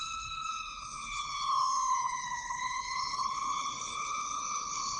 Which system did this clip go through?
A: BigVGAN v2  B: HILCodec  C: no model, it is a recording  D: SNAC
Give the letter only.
B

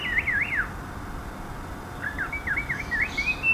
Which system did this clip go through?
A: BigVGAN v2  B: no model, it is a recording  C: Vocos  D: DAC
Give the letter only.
B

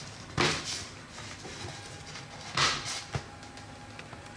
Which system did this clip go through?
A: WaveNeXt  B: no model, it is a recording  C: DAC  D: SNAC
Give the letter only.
B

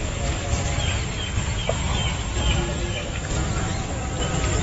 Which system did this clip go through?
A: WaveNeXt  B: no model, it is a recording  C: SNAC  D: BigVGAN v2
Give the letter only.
B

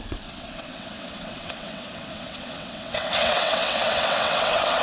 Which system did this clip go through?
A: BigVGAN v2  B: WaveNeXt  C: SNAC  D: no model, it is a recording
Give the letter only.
B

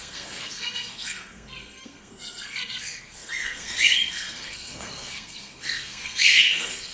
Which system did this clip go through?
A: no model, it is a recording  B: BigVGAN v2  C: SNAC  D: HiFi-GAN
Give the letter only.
C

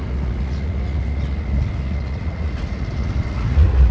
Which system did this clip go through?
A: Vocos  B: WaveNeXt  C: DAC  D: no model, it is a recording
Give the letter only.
A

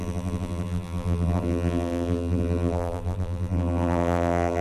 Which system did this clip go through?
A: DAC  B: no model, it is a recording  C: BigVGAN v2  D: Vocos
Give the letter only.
C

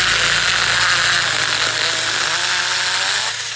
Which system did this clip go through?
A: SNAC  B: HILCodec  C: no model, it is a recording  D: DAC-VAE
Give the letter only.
C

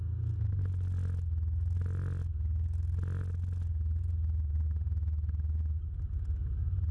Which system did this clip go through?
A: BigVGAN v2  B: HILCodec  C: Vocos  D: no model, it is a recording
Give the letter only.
D